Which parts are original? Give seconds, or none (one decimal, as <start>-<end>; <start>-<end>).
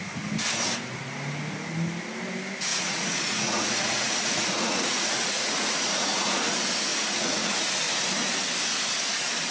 0.0-2.7; 6.4-6.9; 7.7-9.5